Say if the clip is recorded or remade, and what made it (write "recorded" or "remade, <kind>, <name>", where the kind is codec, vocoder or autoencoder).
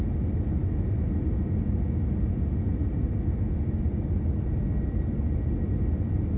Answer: recorded